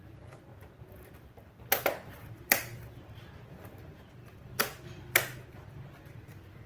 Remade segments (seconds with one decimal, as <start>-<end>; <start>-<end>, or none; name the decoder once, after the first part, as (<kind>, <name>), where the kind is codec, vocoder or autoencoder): 0.0-6.7 (vocoder, BigVGAN v2)